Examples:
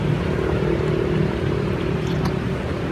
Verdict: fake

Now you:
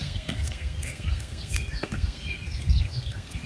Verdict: fake